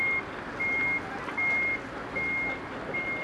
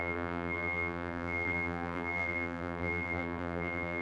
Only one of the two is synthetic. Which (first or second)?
second